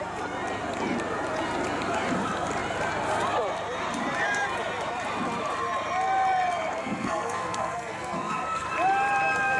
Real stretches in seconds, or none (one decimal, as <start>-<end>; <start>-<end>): 0.0-6.8; 8.7-9.6